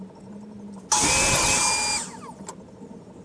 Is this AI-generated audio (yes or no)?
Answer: no